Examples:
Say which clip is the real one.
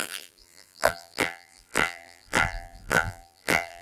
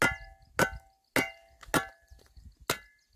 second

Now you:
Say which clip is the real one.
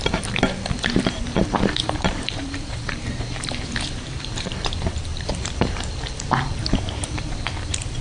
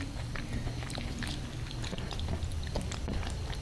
second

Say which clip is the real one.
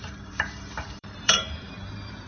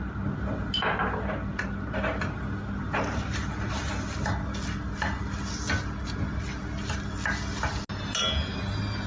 second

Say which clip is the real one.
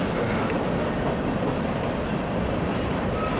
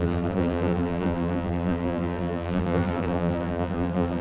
first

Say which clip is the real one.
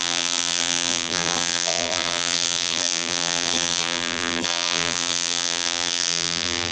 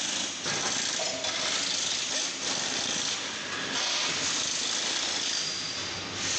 second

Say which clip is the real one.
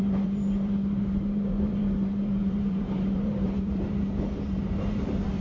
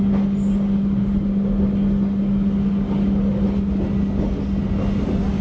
second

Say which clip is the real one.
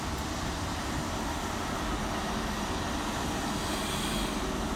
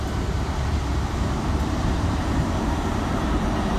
first